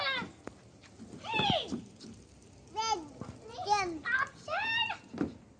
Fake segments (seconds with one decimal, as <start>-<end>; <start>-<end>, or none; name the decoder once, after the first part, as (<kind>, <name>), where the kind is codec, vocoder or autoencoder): none